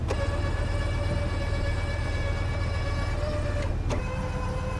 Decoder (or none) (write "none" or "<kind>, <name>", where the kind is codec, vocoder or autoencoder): none